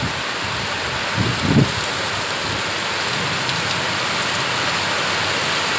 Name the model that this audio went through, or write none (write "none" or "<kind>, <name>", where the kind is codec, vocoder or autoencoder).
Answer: none